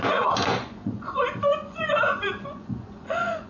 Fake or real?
fake